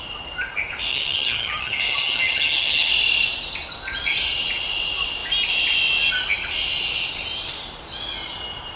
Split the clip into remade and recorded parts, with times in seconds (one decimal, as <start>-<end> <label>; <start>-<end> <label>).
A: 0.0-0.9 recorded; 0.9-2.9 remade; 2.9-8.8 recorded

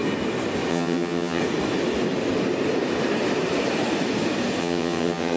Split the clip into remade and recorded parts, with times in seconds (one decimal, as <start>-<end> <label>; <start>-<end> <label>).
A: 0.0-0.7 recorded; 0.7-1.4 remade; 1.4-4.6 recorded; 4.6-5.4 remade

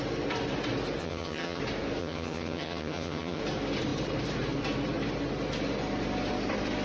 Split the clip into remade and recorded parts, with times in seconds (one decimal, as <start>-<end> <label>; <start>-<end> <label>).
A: 0.0-1.0 recorded; 1.0-1.6 remade; 1.6-2.0 recorded; 2.0-3.4 remade; 3.4-6.8 recorded

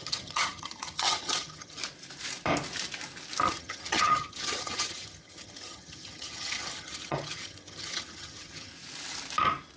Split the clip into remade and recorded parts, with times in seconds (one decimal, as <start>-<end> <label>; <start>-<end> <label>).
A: 0.0-1.8 remade; 1.8-3.5 recorded; 3.5-8.7 remade; 8.7-9.8 recorded

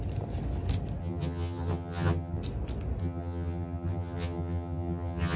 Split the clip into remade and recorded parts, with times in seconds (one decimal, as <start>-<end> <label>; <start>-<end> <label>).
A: 0.0-1.0 recorded; 1.0-2.4 remade; 2.4-3.0 recorded; 3.0-5.4 remade